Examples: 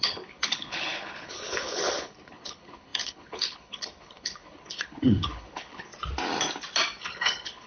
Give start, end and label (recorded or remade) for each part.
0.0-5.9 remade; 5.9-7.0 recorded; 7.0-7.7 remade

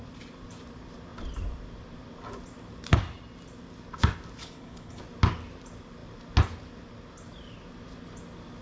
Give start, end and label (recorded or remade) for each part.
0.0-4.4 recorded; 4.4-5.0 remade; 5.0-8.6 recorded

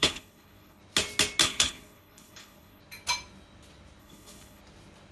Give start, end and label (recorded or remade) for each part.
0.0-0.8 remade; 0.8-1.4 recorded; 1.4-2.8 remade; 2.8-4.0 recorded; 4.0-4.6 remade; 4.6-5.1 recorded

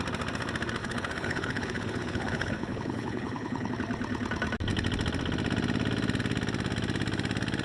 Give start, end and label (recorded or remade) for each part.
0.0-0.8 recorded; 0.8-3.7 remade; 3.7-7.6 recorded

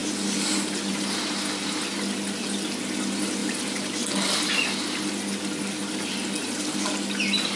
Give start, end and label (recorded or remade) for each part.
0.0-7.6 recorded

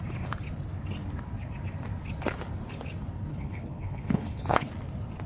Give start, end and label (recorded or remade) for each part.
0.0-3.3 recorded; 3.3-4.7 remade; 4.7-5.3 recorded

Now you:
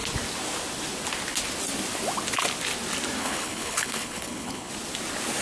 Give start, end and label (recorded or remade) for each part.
0.0-3.2 recorded; 3.2-4.7 remade; 4.7-5.4 recorded